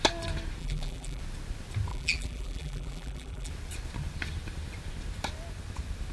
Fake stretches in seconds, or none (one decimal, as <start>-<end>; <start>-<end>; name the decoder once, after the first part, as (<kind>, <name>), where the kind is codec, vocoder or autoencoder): 0.6-1.2 (vocoder, BigVGAN v2); 1.9-3.5